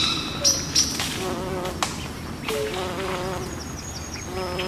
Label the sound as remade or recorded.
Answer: recorded